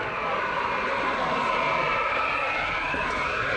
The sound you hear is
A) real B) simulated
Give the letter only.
A